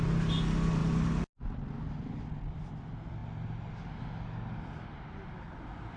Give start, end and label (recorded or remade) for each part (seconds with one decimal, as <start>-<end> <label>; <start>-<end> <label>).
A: 0.0-6.0 recorded